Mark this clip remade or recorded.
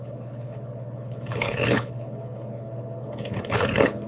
remade